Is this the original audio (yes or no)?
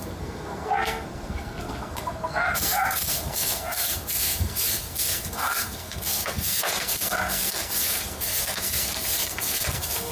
no